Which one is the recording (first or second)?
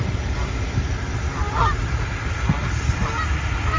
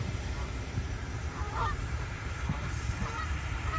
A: first